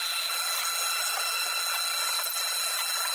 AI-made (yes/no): no